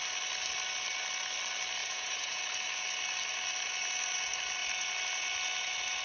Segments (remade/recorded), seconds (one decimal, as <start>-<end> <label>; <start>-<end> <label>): 0.0-1.8 recorded; 1.8-2.4 remade; 2.4-6.0 recorded